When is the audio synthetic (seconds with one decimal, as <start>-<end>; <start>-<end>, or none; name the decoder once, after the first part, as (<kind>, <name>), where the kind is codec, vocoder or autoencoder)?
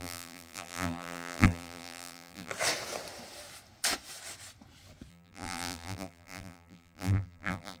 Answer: 0.0-2.5 (vocoder, BigVGAN v2); 5.1-7.8